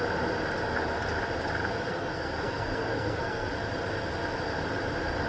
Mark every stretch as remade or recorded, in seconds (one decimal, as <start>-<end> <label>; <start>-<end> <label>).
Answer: 0.0-1.9 recorded; 1.9-3.5 remade; 3.5-5.3 recorded